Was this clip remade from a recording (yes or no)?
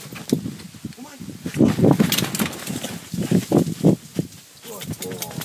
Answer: no